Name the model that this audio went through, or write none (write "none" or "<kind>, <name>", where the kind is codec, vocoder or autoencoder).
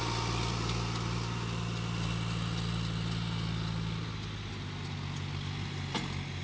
none